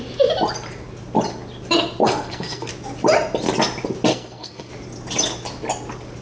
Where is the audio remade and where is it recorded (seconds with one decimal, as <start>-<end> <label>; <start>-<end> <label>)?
0.0-2.0 recorded; 2.0-2.7 remade; 2.7-4.1 recorded; 4.1-4.7 remade; 4.7-6.2 recorded